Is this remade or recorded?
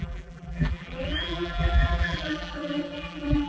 remade